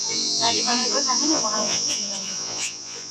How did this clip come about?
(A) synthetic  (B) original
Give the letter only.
A